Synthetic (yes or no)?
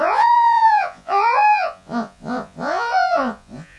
yes